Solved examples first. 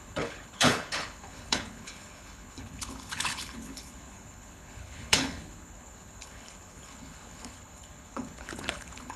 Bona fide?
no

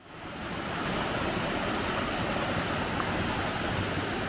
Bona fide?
yes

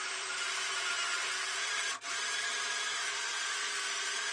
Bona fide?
yes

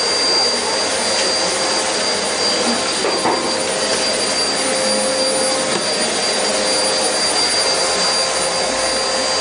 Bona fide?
yes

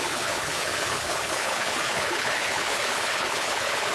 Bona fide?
no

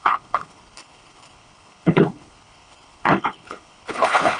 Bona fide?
no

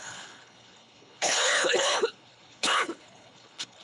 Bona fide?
no